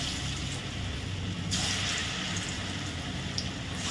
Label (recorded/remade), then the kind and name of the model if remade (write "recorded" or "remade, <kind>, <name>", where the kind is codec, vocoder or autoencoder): recorded